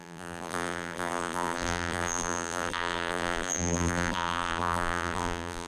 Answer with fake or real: fake